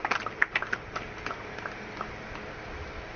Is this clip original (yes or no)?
yes